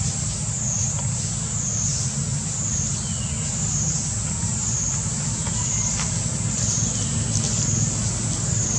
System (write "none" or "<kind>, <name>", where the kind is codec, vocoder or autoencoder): none